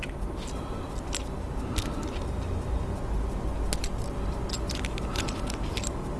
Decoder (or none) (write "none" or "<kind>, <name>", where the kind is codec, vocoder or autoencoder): none